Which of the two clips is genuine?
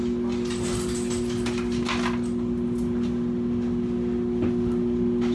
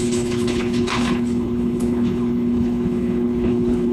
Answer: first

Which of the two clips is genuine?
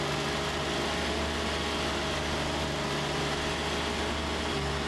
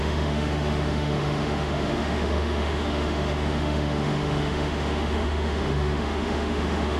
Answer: first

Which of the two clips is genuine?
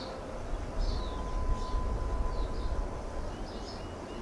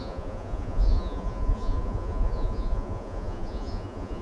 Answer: first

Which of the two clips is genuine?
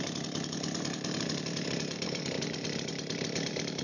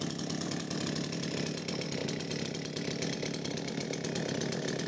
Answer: second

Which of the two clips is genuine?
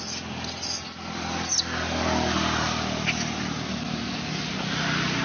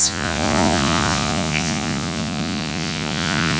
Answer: first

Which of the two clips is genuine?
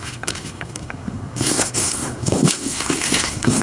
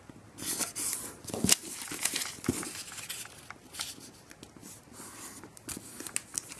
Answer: second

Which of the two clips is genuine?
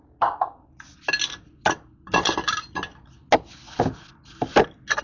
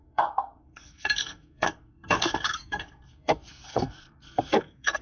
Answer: first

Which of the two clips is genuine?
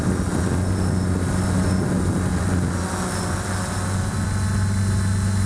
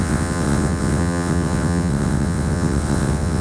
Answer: first